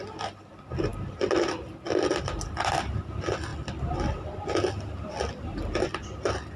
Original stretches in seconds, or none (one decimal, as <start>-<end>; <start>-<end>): 0.0-6.6